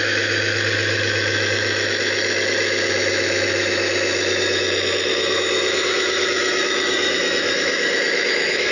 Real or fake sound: fake